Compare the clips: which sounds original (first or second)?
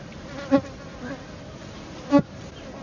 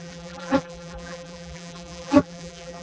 first